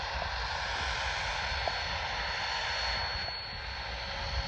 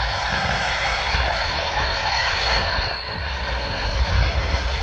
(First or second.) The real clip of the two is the first